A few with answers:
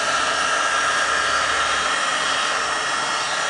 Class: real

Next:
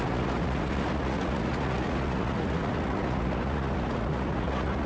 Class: fake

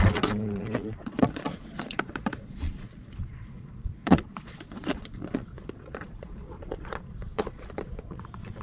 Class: fake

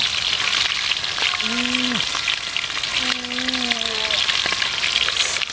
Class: real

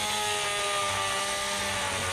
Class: real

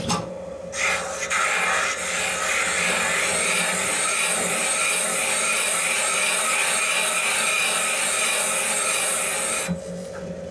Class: real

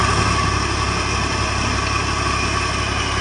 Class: real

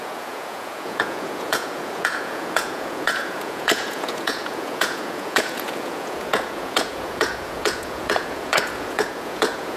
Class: fake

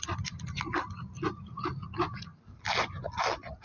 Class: real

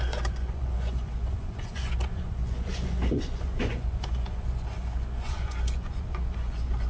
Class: fake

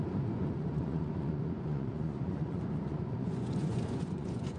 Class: fake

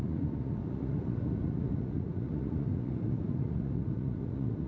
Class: fake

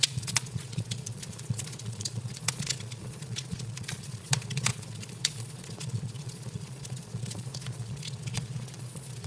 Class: fake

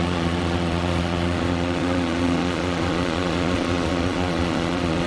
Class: fake